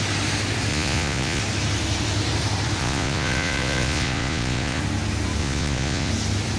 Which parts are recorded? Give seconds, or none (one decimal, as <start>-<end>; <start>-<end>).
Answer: 0.0-0.7; 1.4-2.8; 4.8-5.4; 6.1-6.6